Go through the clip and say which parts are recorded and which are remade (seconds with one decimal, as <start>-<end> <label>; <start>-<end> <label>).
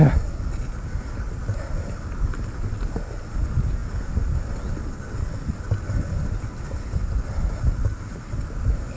0.0-9.0 recorded